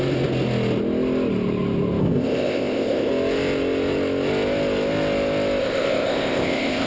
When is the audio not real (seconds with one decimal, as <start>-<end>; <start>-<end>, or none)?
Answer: 2.0-3.1; 5.6-6.9